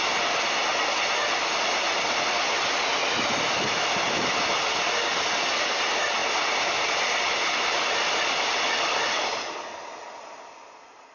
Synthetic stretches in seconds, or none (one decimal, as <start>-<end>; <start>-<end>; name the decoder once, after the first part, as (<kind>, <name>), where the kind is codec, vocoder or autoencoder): none